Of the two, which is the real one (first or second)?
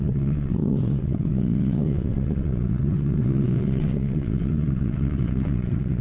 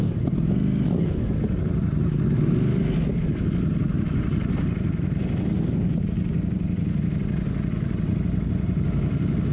second